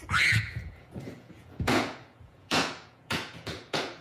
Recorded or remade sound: remade